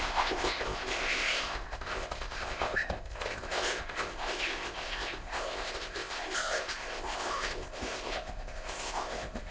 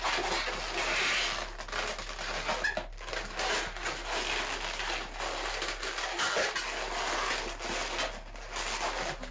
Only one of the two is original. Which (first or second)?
second